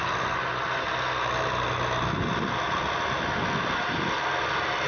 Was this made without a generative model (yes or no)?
yes